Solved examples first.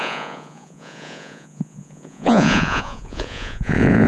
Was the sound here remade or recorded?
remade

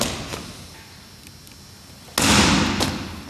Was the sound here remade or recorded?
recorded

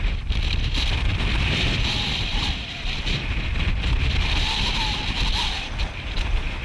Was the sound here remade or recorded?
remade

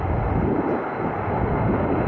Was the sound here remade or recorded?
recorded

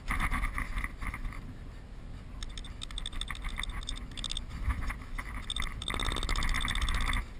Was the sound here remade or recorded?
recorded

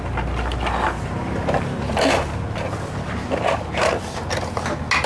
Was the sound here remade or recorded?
recorded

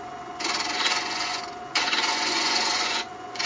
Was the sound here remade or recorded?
remade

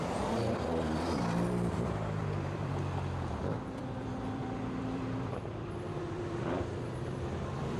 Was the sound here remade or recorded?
remade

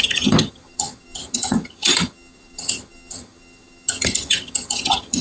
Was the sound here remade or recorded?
remade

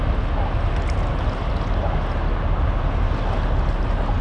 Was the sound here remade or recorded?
recorded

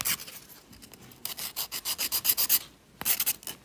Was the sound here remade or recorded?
recorded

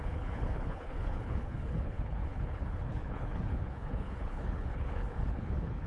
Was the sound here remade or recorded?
remade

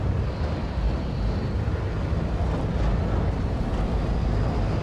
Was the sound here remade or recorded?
recorded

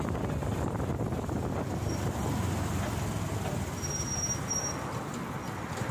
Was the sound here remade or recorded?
recorded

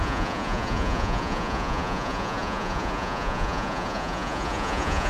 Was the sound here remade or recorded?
remade